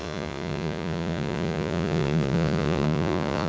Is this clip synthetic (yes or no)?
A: yes